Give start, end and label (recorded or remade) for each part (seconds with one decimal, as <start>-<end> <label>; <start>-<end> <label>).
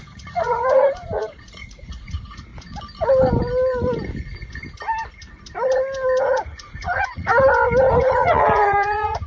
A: 0.0-2.5 remade; 2.5-6.2 recorded; 6.2-7.3 remade; 7.3-8.0 recorded; 8.0-9.3 remade